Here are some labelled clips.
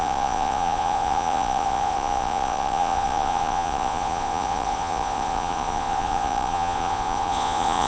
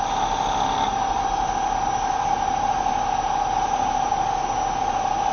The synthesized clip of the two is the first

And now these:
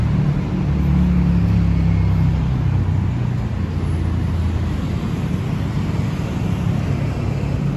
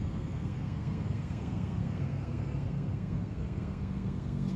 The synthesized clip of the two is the second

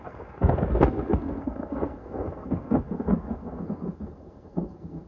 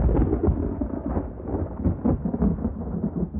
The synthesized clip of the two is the first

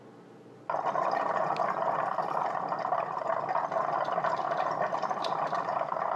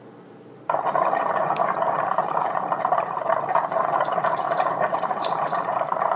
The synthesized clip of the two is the second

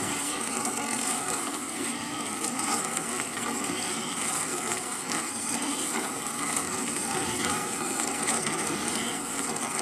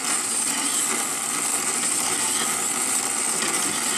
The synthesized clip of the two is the first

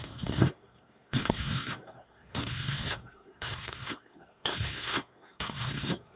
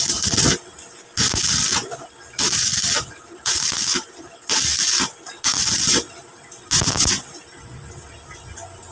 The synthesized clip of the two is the first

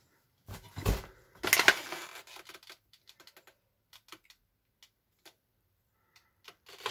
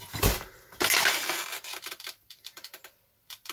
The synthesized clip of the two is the second